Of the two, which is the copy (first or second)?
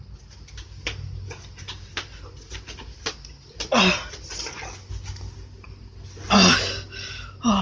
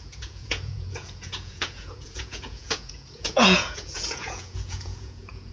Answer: second